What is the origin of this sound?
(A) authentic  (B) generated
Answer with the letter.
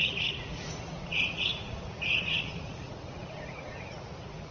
B